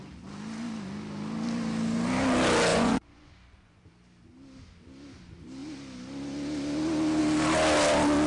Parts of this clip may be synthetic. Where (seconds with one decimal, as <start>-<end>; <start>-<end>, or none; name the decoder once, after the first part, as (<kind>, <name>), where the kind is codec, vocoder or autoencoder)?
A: 2.7-3.8 (vocoder, Vocos)